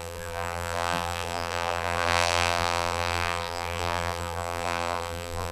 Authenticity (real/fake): fake